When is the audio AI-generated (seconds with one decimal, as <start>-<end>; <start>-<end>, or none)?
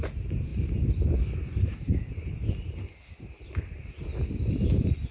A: none